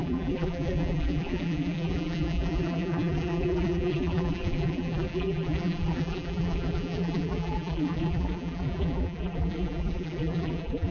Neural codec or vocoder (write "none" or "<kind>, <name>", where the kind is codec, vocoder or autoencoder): vocoder, BigVGAN v2